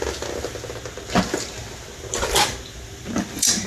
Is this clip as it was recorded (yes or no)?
yes